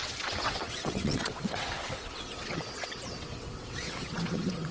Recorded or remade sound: remade